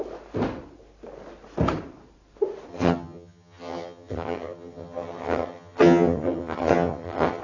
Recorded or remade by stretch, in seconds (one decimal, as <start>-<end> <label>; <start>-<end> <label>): 0.0-2.7 recorded; 2.7-7.4 remade